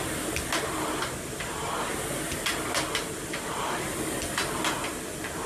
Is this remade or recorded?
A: recorded